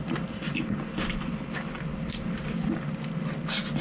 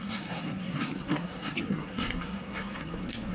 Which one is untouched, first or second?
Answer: first